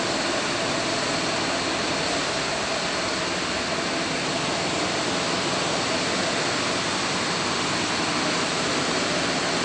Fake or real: real